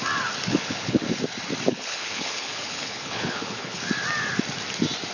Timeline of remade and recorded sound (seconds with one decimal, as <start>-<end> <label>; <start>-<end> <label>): 0.0-0.5 recorded; 0.5-1.2 remade; 1.2-1.7 recorded; 1.7-3.8 remade; 3.8-5.1 recorded